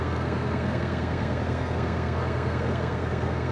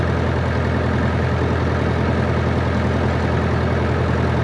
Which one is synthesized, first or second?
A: first